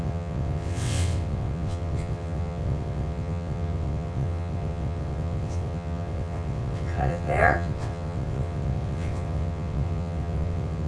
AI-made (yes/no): yes